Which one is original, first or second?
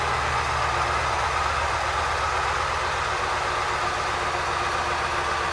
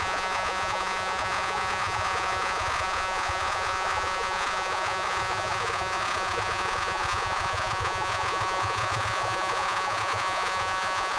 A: first